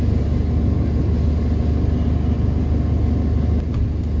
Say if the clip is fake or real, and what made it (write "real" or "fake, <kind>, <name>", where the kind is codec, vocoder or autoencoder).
real